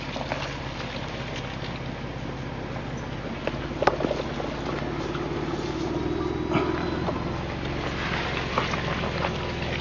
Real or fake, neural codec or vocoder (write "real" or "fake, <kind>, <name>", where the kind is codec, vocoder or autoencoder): real